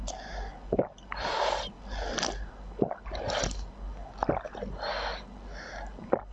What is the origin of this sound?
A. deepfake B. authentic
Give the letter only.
B